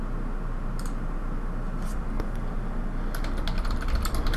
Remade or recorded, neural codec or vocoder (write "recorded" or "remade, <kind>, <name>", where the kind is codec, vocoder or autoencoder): recorded